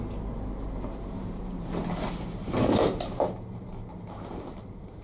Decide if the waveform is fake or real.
fake